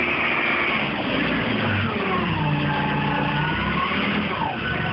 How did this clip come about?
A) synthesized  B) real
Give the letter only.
B